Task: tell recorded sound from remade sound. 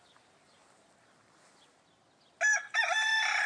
recorded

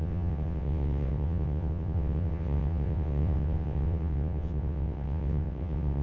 remade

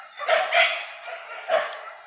recorded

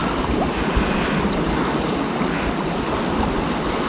recorded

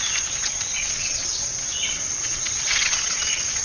remade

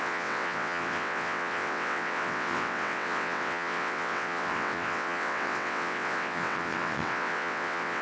remade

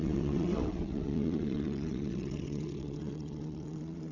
remade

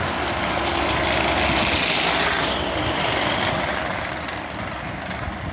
recorded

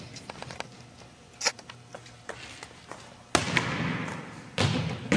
recorded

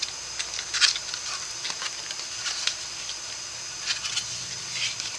recorded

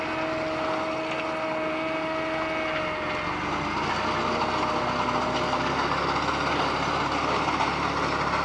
recorded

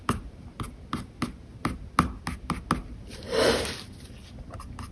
recorded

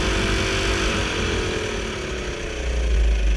recorded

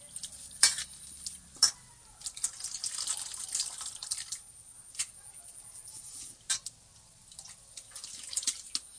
recorded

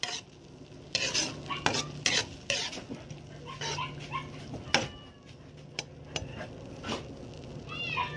recorded